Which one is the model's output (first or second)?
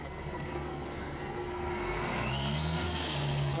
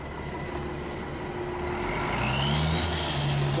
first